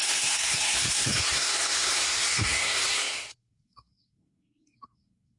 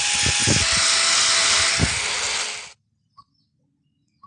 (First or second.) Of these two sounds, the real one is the second